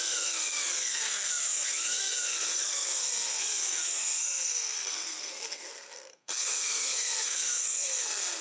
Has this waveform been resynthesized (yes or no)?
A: yes